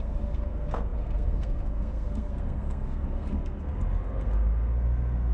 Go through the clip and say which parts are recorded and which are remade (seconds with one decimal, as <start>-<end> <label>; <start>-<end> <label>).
0.0-5.3 remade